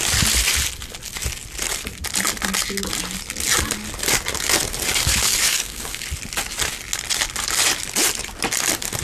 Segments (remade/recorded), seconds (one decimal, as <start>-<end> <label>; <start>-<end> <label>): 0.0-4.9 recorded; 4.9-6.0 remade; 6.0-9.0 recorded